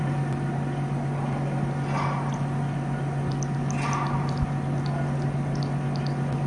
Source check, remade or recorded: recorded